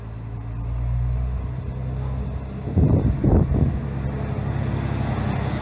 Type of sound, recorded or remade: recorded